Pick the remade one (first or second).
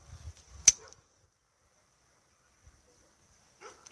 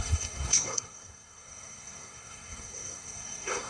second